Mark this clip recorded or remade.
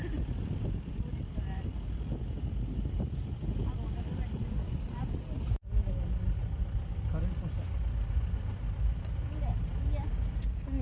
recorded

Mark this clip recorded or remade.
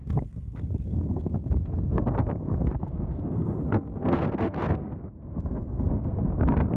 remade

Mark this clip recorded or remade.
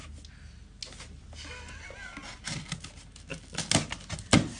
recorded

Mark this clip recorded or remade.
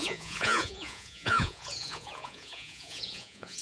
remade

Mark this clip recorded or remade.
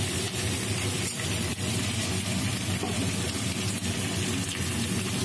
recorded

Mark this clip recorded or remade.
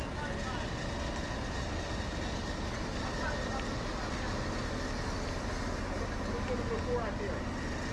recorded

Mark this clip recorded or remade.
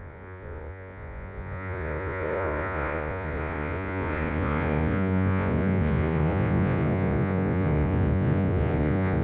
remade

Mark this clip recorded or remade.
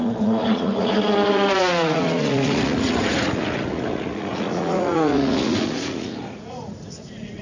remade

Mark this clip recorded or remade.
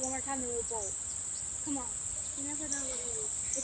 recorded